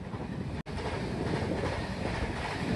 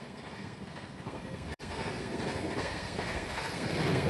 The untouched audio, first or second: first